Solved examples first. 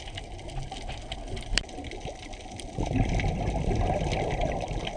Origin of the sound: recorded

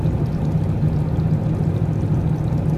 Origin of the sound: recorded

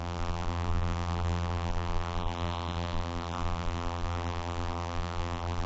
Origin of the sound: remade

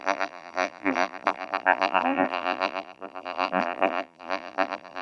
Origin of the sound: remade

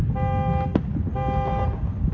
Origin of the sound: recorded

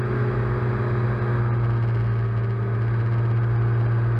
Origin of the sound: recorded